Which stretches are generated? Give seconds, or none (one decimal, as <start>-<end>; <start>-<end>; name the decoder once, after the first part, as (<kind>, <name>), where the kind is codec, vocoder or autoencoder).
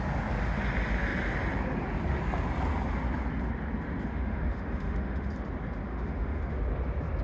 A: 4.1-5.3 (autoencoder, DAC-VAE); 5.9-6.5